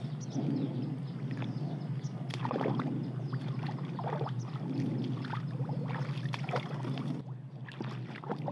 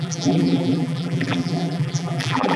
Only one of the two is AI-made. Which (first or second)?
second